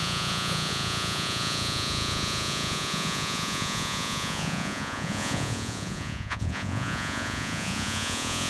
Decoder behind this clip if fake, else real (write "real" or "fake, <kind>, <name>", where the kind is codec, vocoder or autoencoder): fake, vocoder, Vocos